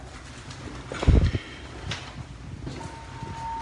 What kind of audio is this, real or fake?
real